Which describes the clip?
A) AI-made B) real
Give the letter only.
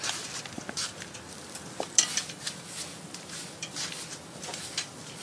B